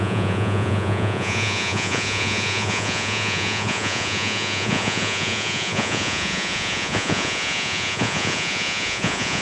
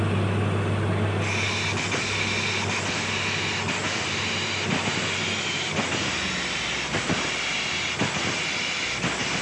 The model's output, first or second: first